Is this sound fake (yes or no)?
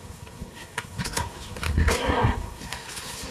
yes